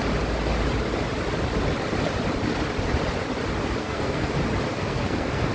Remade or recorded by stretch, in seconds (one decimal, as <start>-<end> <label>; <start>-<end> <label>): 0.0-3.8 recorded; 3.8-4.3 remade; 4.3-4.7 recorded; 4.7-5.5 remade